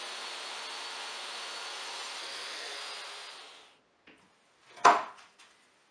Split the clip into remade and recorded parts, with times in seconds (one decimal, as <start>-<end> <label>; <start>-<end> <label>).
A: 0.0-2.2 recorded; 2.2-2.8 remade; 2.8-5.9 recorded